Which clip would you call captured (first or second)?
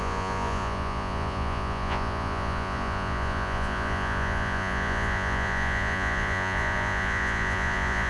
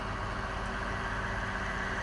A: second